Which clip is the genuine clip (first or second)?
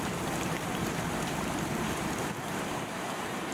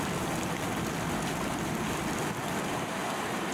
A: second